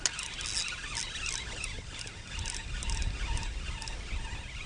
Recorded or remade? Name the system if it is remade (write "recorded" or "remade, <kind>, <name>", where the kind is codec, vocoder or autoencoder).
recorded